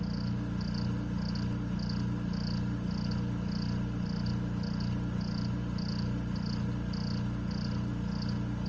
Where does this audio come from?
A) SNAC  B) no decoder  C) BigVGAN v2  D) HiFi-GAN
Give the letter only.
B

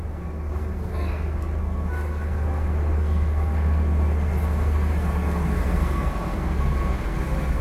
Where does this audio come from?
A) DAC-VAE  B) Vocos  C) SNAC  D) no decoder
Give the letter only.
C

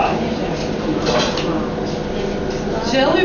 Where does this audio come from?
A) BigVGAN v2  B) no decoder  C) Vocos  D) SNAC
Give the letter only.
B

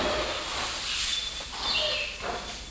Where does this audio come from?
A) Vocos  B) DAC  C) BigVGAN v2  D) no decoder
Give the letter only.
D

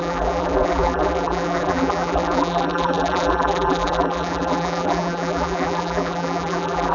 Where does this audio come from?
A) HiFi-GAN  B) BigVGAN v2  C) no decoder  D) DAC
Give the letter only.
B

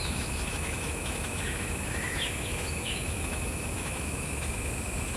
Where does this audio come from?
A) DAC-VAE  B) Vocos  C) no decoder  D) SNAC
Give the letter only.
A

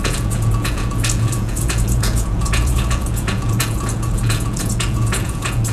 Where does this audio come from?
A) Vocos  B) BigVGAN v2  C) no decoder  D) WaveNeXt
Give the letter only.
A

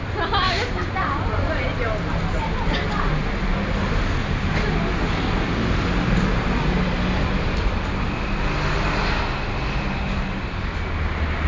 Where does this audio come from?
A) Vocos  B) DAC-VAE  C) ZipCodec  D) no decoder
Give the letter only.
D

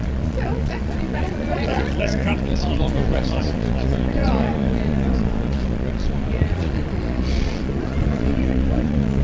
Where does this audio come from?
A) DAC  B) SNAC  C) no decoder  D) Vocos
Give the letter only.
D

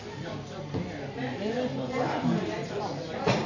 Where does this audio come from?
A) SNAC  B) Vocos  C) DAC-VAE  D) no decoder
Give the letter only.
D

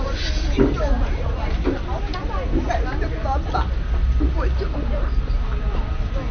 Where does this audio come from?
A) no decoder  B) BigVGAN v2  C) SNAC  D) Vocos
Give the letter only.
A